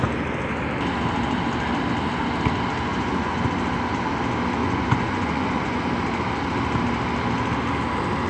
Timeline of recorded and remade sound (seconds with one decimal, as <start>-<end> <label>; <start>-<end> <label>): 0.0-2.9 recorded; 2.9-3.4 remade; 3.4-4.6 recorded; 4.6-5.8 remade; 5.8-8.3 recorded